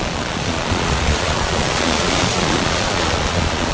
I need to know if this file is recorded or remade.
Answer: remade